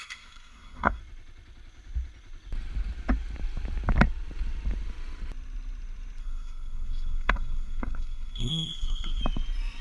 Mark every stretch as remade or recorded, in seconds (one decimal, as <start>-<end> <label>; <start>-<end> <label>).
0.0-1.0 remade; 1.0-6.2 recorded; 6.2-9.2 remade; 9.2-9.8 recorded